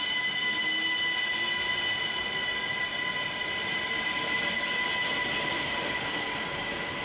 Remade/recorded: recorded